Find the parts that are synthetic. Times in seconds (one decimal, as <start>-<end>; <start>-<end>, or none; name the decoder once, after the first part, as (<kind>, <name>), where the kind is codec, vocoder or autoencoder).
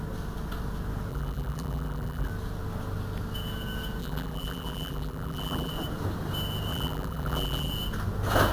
1.1-2.3 (vocoder, BigVGAN v2); 4.0-5.7; 6.7-7.7